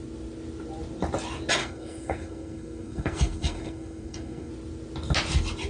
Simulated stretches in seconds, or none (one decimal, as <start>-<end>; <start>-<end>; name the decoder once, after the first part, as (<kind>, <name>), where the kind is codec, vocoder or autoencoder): 1.6-4.5 (codec, SNAC)